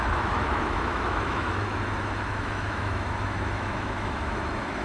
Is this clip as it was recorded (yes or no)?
no